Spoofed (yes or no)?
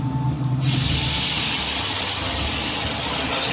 no